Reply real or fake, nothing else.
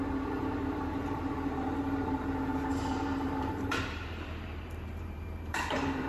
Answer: fake